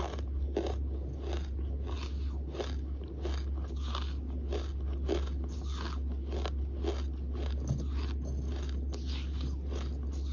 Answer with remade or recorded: recorded